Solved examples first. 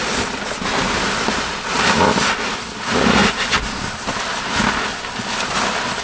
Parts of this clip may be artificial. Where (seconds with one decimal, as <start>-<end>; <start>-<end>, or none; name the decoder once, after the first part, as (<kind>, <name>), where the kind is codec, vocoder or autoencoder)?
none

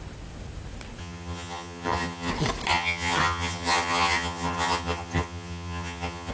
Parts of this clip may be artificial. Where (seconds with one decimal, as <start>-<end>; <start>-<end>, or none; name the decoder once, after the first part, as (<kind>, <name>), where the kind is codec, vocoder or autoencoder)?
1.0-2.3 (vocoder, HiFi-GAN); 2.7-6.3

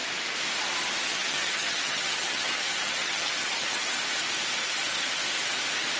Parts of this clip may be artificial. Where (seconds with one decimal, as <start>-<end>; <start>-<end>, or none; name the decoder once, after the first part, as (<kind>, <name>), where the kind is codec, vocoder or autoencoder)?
1.0-3.9 (vocoder, HiFi-GAN); 4.6-5.2